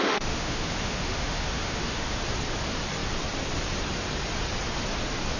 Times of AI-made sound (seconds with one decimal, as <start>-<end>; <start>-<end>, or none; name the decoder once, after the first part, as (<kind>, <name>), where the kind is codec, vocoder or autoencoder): 0.0-2.2 (autoencoder, DAC-VAE)